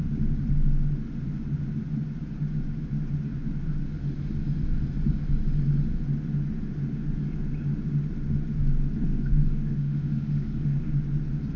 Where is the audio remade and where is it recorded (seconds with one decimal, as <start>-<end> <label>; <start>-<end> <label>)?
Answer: 0.0-9.1 recorded; 9.1-10.9 remade; 10.9-11.6 recorded